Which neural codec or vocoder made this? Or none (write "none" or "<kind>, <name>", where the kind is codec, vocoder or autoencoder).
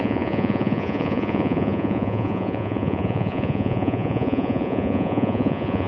vocoder, Vocos